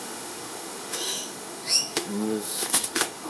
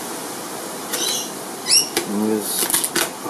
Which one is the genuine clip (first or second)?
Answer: second